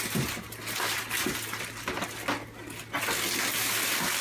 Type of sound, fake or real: real